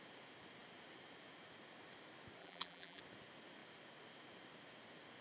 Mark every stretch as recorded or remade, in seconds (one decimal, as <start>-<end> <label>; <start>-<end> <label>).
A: 0.0-2.4 recorded; 2.4-3.0 remade; 3.0-5.2 recorded